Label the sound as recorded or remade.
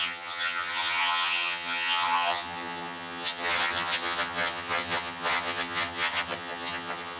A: remade